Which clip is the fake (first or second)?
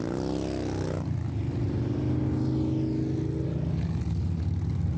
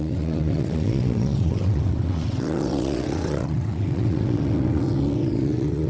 second